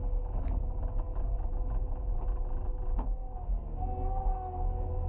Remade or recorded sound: recorded